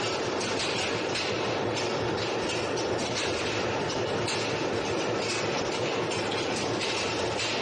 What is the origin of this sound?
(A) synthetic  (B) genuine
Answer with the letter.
B